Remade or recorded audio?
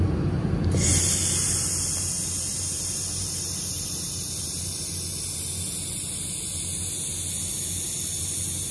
recorded